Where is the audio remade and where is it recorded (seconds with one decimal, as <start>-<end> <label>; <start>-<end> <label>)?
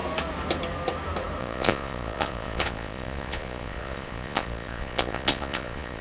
0.0-1.4 recorded; 1.4-6.0 remade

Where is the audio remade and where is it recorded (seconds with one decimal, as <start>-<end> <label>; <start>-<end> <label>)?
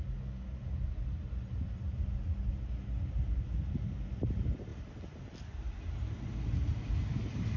0.0-7.6 recorded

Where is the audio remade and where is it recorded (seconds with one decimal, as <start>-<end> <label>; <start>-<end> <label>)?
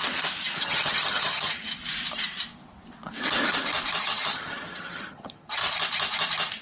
0.0-0.6 recorded; 0.6-1.7 remade; 1.7-4.0 recorded; 4.0-5.6 remade; 5.6-6.6 recorded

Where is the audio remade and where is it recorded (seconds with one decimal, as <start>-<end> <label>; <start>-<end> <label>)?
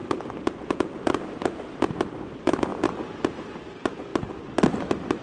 0.0-1.7 recorded; 1.7-2.7 remade; 2.7-3.2 recorded; 3.2-4.1 remade; 4.1-4.7 recorded; 4.7-5.2 remade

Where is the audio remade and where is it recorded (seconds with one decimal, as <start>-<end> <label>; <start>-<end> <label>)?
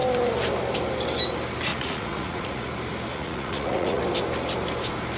0.0-1.7 recorded; 1.7-2.7 remade; 2.7-3.1 recorded; 3.1-4.0 remade; 4.0-5.2 recorded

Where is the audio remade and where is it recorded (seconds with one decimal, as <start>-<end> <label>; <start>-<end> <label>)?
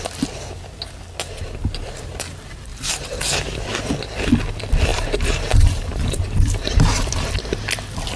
0.0-2.7 recorded; 2.7-3.6 remade; 3.6-4.9 recorded; 4.9-7.3 remade; 7.3-8.2 recorded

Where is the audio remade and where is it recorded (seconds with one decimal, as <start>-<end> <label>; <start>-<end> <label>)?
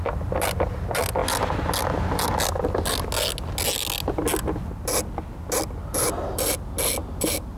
0.0-7.6 recorded